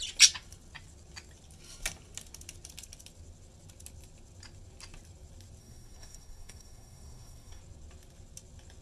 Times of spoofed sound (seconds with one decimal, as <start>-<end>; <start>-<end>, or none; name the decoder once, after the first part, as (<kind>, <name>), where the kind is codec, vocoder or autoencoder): 5.6-7.6 (codec, SNAC)